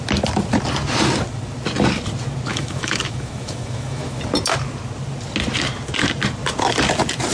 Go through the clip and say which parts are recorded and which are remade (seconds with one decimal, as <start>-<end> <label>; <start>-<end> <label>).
0.0-2.5 recorded; 2.5-4.2 remade; 4.2-7.3 recorded